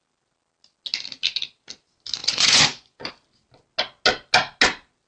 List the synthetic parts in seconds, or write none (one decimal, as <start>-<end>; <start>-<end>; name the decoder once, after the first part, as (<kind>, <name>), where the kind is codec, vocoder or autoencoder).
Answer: 2.2-3.1 (vocoder, Vocos)